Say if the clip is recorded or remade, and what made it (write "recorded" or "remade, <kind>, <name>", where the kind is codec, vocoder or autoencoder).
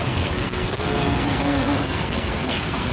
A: remade, codec, SNAC